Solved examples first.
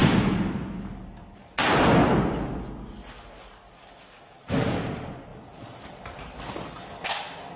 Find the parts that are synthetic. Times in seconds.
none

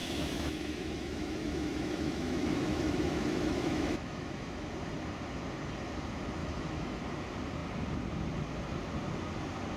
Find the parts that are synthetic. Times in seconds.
0.0-4.7 (autoencoder, DAC-VAE); 6.4-7.0

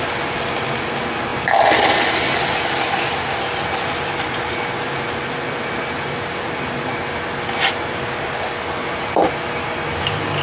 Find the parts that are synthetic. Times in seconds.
none

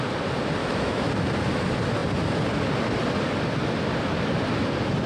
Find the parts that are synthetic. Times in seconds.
0.6-1.1 (autoencoder, DAC-VAE)